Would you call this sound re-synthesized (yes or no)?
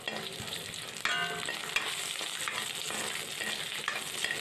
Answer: no